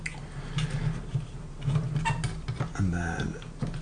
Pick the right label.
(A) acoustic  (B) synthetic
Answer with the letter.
A